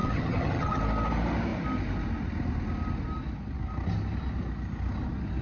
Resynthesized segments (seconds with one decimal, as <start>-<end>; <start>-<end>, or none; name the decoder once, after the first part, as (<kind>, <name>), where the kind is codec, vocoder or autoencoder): 0.0-0.8 (vocoder, HiFi-GAN)